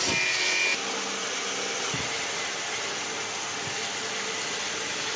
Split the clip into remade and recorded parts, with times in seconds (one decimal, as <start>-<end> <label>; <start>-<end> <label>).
0.0-5.2 recorded